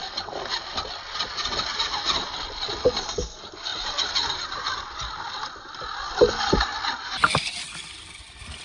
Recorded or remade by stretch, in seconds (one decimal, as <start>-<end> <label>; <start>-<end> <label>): 0.0-8.6 recorded